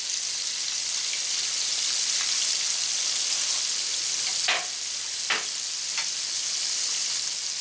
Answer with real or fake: real